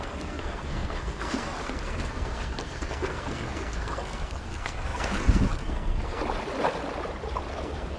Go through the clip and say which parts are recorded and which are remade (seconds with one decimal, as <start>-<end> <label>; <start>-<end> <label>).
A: 0.0-6.2 remade; 6.2-7.5 recorded; 7.5-8.0 remade